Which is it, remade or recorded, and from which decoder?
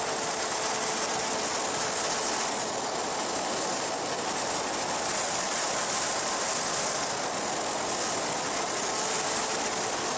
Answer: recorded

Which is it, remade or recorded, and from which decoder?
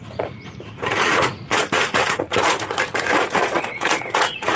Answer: remade, vocoder, Vocos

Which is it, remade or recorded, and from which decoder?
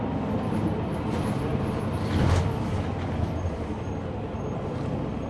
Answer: recorded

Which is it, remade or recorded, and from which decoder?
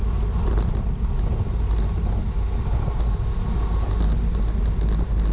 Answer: recorded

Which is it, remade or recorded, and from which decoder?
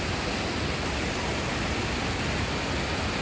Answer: recorded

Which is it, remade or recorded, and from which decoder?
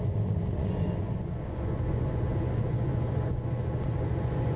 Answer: remade, vocoder, Vocos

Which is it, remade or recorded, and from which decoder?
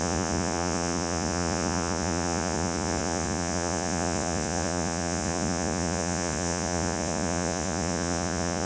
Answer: remade, vocoder, Vocos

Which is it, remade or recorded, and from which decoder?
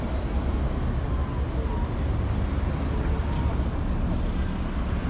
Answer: recorded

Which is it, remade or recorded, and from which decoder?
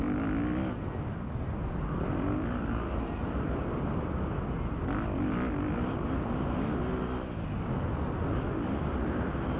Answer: recorded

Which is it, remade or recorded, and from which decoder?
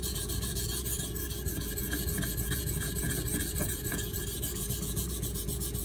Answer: remade, vocoder, Vocos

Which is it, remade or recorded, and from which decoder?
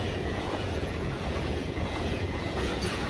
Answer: remade, vocoder, Vocos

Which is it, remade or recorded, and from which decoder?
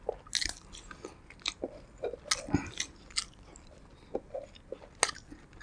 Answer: recorded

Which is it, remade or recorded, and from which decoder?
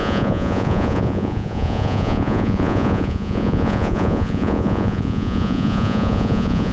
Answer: remade, vocoder, Vocos